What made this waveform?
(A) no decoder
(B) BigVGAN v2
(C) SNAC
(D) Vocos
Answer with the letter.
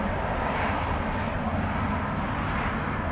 A